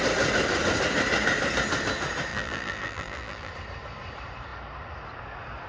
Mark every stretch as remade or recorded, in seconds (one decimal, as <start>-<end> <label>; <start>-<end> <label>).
0.0-2.3 recorded; 2.3-3.5 remade; 3.5-5.7 recorded